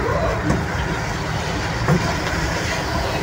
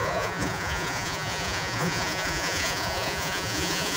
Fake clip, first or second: second